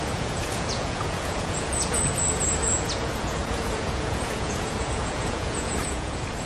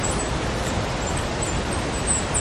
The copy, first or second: first